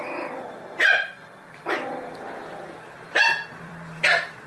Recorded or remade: remade